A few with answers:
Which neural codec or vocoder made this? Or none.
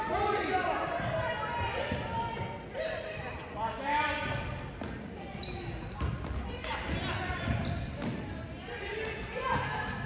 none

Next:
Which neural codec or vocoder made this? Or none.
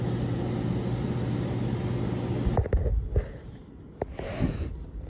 none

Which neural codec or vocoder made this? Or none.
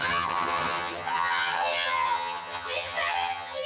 vocoder, HiFi-GAN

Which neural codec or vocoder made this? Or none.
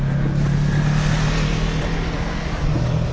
none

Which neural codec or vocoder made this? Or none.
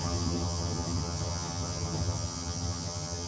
vocoder, HiFi-GAN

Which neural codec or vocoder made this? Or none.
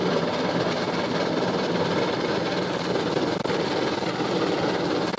none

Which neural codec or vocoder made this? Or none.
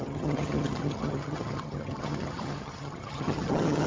vocoder, HiFi-GAN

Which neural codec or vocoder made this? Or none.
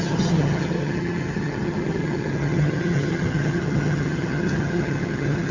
vocoder, HiFi-GAN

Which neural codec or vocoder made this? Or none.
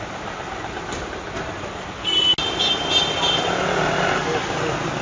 none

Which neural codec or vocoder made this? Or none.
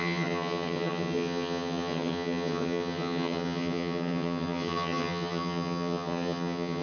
vocoder, HiFi-GAN